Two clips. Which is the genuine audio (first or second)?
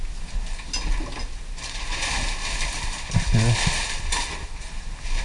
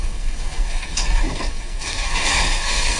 first